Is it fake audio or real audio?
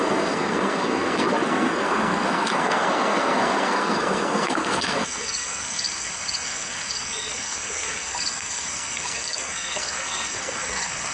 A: fake